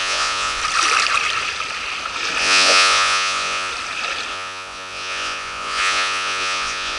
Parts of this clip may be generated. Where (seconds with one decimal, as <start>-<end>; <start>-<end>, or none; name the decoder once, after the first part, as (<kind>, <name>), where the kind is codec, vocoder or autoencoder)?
0.0-0.6 (vocoder, Vocos); 2.4-3.7; 4.3-7.0